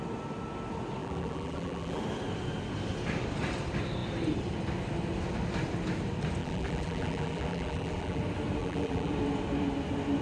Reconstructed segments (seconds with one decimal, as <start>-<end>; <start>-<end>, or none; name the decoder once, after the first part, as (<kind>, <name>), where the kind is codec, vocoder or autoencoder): 1.0-2.0 (vocoder, BigVGAN v2); 6.4-8.2; 8.6-9.1